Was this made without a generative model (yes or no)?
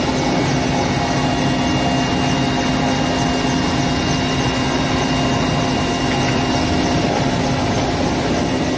yes